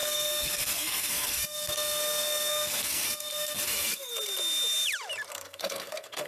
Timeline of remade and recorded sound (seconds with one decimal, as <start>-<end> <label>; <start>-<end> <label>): 0.0-4.1 remade; 4.1-5.3 recorded; 5.3-6.3 remade